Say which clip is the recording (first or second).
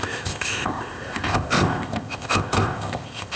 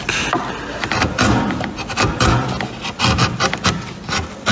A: second